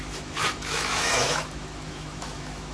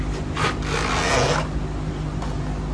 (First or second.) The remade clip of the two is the first